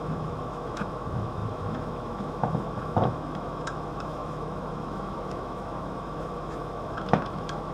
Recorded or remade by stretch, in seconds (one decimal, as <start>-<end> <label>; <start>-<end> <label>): 0.0-7.7 remade

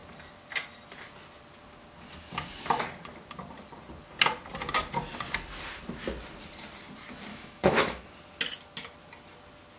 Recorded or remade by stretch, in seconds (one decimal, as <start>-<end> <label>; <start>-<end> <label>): 0.0-7.3 recorded; 7.3-8.0 remade; 8.0-9.8 recorded

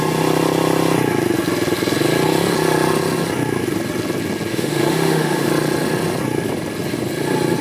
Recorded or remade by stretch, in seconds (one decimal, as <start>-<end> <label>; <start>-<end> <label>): 0.0-4.5 recorded; 4.5-5.5 remade; 5.5-7.6 recorded

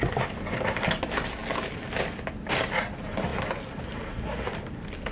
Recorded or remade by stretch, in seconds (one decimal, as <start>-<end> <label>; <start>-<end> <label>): 0.0-5.1 recorded

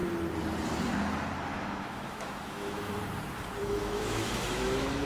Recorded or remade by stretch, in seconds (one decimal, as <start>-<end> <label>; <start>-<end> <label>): 0.0-1.5 recorded; 1.5-2.9 remade; 2.9-3.6 recorded; 3.6-5.1 remade